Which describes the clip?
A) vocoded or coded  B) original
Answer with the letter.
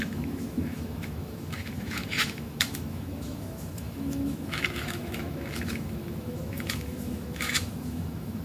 A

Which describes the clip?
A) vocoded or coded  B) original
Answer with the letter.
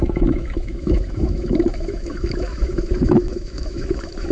A